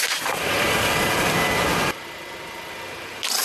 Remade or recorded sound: recorded